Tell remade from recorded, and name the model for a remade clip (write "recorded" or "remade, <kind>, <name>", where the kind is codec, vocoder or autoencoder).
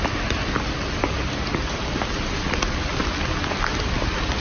recorded